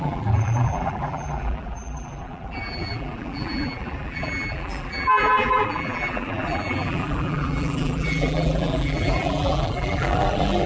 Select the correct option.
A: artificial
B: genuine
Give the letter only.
A